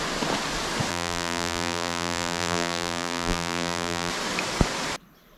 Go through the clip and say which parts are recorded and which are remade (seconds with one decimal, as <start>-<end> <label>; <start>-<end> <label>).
0.0-0.9 recorded; 0.9-4.1 remade; 4.1-5.4 recorded